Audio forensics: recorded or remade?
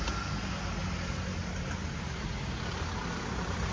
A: recorded